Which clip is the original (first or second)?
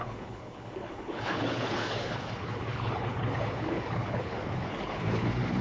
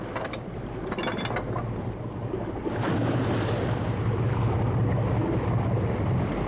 second